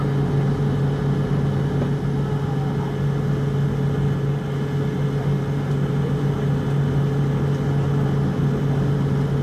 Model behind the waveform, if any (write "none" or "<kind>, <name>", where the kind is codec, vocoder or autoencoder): none